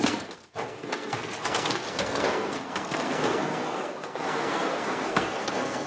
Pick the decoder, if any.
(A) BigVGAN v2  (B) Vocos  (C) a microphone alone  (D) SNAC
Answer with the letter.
D